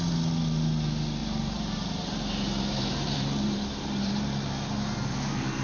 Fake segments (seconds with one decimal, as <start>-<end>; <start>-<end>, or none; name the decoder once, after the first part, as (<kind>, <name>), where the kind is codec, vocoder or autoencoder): 1.2-4.1 (vocoder, BigVGAN v2)

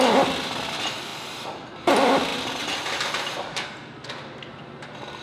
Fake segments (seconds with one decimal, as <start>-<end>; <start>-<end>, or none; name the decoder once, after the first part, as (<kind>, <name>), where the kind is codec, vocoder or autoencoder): 3.5-4.1 (codec, SNAC)